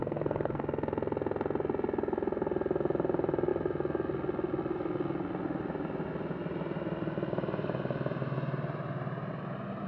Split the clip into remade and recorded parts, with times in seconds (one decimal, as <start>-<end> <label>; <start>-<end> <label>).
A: 0.0-0.6 remade; 0.6-9.9 recorded